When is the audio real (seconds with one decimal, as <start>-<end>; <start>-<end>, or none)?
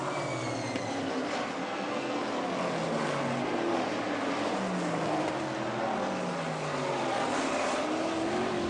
0.0-1.6; 2.2-8.7